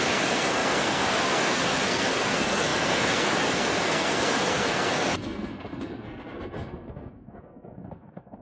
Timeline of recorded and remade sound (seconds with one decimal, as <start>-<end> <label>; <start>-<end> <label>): 0.0-8.4 remade